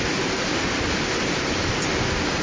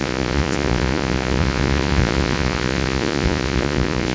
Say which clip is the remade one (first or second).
second